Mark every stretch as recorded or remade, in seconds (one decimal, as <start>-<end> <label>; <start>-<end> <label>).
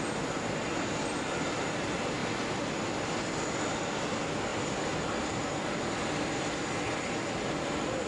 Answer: 0.0-8.1 recorded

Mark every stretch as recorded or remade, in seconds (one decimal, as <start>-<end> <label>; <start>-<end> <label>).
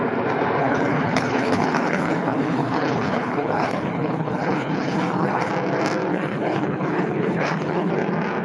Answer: 0.0-0.6 recorded; 0.6-5.5 remade; 5.5-6.1 recorded; 6.1-7.9 remade; 7.9-8.4 recorded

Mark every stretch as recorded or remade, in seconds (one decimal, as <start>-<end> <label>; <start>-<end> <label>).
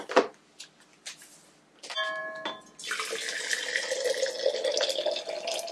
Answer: 0.0-5.7 recorded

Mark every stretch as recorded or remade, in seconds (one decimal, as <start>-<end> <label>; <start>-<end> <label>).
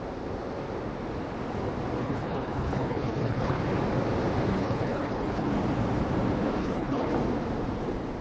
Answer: 0.0-2.0 recorded; 2.0-3.6 remade; 3.6-4.5 recorded; 4.5-5.5 remade; 5.5-6.6 recorded; 6.6-7.2 remade; 7.2-8.2 recorded